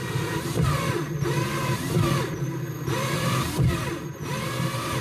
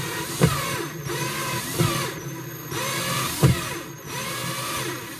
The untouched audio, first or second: second